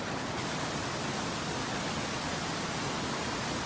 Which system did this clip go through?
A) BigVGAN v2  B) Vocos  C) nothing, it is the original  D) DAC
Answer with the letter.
C